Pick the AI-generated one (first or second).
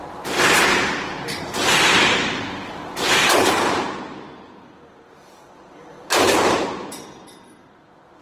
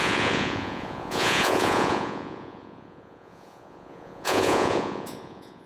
second